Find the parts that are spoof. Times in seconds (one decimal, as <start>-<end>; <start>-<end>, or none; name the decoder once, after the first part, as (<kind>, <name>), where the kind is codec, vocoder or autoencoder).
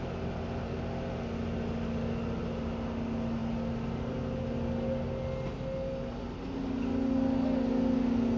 none